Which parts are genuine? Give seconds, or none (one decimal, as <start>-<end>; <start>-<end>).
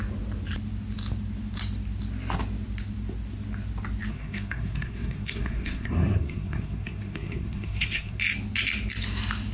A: 0.0-4.1; 8.2-9.5